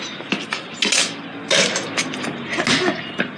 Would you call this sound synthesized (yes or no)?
no